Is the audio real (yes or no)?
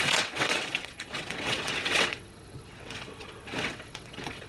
no